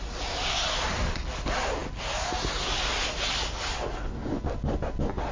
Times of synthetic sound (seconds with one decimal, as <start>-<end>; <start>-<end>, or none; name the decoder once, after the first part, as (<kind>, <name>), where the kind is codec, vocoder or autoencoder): none